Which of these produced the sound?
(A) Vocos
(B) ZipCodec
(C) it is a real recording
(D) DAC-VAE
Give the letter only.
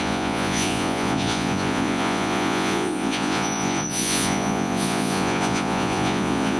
A